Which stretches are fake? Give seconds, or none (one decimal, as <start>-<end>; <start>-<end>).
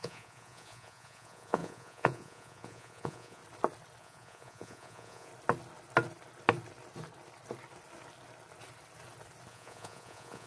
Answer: 0.0-3.4; 4.0-5.3; 9.5-10.5